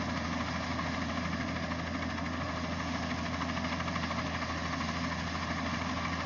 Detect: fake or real real